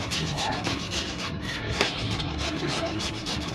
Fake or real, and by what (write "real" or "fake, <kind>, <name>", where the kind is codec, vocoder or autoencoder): fake, codec, SNAC